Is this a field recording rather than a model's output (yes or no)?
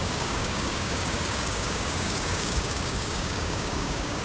no